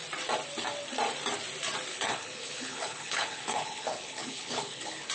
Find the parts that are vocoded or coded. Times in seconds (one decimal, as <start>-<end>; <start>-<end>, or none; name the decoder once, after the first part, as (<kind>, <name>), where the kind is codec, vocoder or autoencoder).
1.9-5.1 (codec, HILCodec)